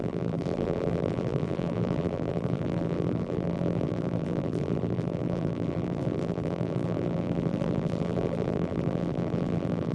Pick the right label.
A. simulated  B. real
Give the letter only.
A